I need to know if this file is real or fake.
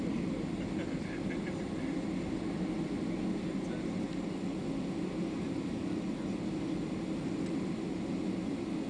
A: real